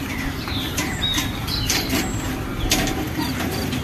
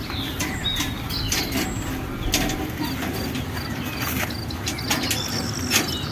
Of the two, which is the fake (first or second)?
first